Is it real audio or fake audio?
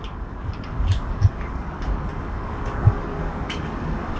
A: fake